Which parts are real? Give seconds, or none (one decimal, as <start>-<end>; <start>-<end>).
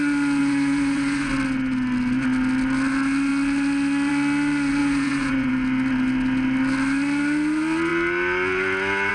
0.0-0.4; 1.3-4.8; 5.5-9.1